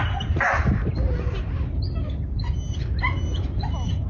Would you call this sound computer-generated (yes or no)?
no